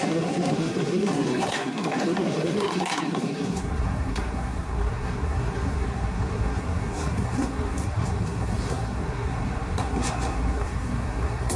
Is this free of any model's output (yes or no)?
no